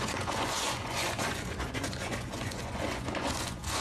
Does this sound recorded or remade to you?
remade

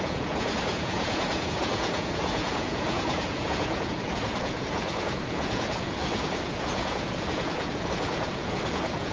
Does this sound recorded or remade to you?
remade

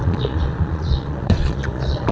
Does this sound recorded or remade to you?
remade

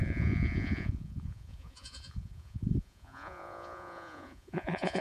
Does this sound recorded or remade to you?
remade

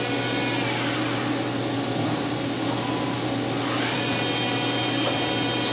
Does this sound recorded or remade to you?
recorded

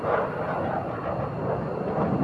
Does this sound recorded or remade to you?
recorded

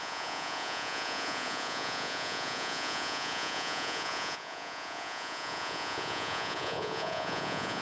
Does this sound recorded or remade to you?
remade